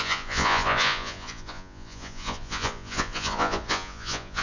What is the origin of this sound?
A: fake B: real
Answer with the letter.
A